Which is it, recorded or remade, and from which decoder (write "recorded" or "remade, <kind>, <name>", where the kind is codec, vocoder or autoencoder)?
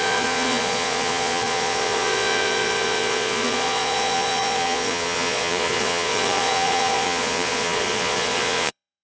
remade, vocoder, Vocos